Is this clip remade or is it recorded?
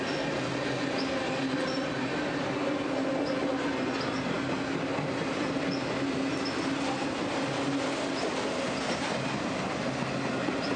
recorded